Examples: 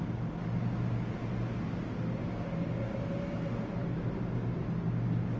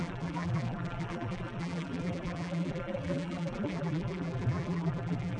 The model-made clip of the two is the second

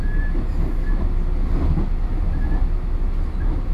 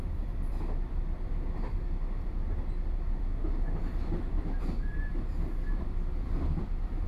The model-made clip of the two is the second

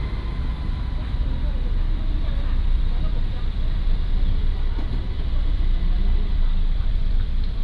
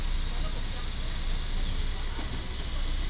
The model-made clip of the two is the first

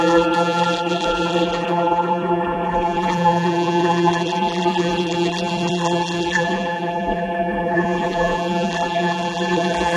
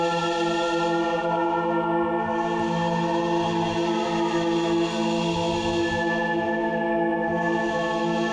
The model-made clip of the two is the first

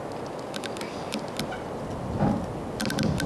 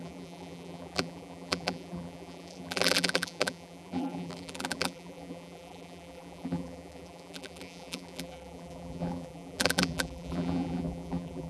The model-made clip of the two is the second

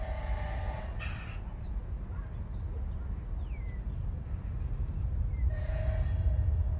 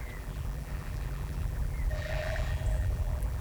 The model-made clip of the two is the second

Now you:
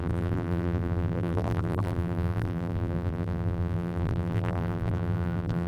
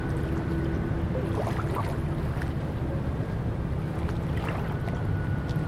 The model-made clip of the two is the first